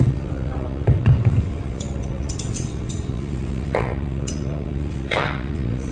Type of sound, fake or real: fake